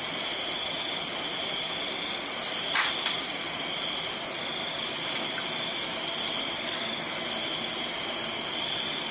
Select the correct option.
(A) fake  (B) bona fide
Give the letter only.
B